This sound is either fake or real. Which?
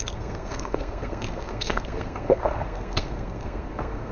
fake